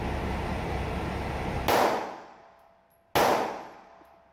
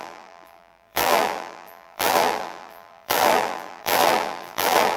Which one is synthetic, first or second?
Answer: second